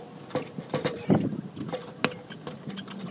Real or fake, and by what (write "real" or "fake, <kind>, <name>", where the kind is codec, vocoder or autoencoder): real